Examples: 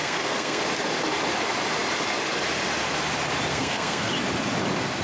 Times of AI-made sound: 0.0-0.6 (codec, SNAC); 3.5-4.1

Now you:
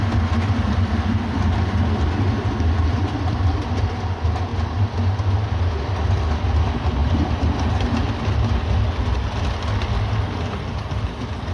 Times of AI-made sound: none

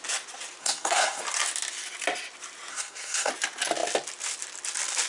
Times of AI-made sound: 0.6-1.2 (codec, SNAC); 2.7-3.3

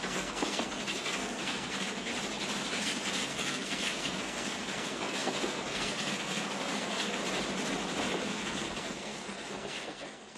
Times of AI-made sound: 0.0-2.1 (codec, SNAC); 2.7-7.2; 8.2-10.4

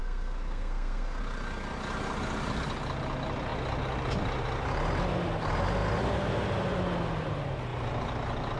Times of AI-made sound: 0.0-1.2 (codec, SNAC)